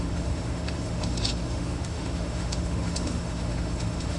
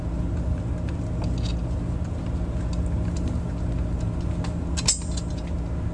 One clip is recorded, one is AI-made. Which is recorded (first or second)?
second